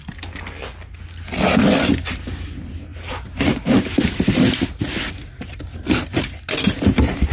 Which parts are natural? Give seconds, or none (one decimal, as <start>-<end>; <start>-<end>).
0.0-2.9; 3.9-7.3